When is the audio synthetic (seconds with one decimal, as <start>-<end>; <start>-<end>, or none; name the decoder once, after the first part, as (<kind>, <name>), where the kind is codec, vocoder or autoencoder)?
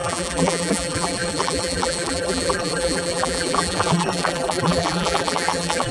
0.0-5.9 (vocoder, BigVGAN v2)